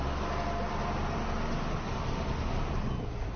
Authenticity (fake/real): real